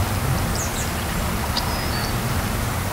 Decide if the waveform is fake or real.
real